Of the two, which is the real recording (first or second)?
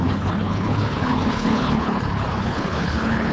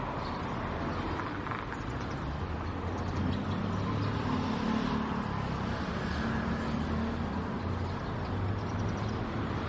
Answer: second